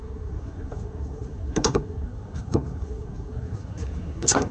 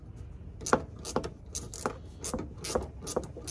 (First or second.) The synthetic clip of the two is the first